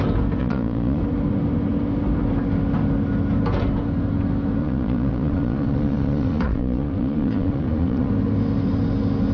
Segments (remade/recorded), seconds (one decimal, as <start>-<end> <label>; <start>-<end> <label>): 0.0-0.4 recorded; 0.4-1.0 remade; 1.0-4.6 recorded; 4.6-8.1 remade; 8.1-9.3 recorded

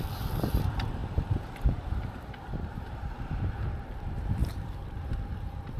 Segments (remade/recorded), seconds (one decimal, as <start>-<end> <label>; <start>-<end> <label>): 0.0-5.8 remade